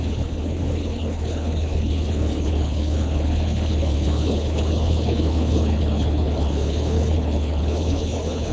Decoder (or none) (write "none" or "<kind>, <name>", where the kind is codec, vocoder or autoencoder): codec, HILCodec